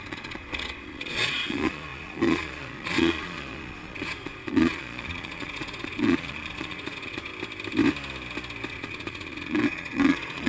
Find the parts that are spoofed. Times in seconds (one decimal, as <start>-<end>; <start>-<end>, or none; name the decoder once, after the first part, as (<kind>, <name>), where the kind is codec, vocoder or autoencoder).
0.0-7.3 (vocoder, Vocos); 8.7-10.5